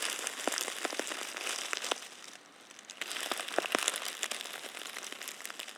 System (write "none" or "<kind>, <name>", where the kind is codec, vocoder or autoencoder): none